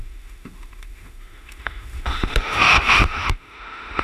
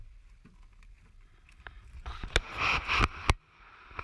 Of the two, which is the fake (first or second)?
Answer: first